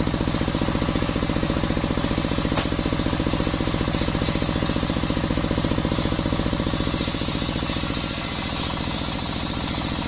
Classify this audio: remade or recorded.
recorded